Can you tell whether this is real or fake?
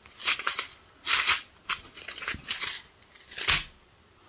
real